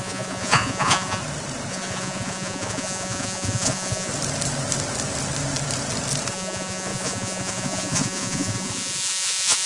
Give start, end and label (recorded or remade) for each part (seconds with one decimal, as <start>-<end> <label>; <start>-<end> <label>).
0.0-1.2 remade; 1.2-1.7 recorded; 1.7-4.1 remade; 4.1-6.3 recorded; 6.3-9.7 remade